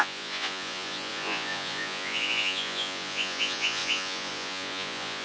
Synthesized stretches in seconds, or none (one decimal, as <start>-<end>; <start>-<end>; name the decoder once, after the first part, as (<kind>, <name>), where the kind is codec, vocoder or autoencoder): 0.0-5.2 (vocoder, Vocos)